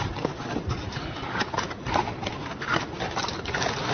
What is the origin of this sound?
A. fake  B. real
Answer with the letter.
B